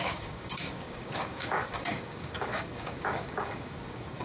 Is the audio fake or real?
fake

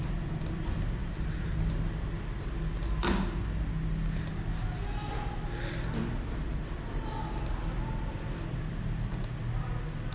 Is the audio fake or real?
real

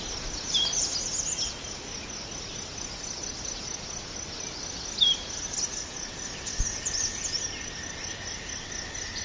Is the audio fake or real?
real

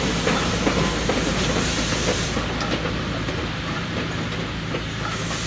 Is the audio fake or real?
real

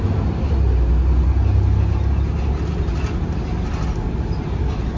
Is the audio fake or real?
real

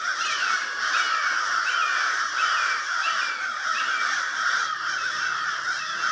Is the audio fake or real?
real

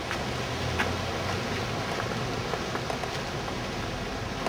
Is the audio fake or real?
real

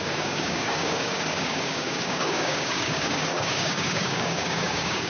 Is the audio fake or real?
fake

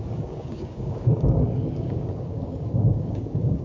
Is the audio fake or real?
fake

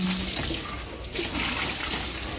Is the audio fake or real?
real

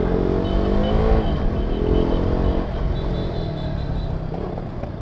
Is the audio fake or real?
real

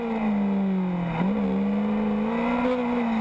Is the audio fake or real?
real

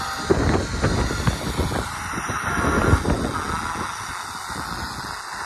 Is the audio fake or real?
real